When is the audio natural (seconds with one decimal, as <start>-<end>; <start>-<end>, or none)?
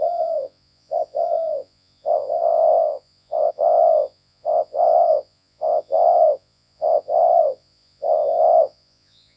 none